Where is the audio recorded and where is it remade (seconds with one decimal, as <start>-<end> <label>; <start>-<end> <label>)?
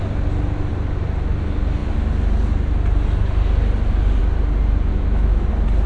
0.0-4.9 recorded; 4.9-5.5 remade; 5.5-5.9 recorded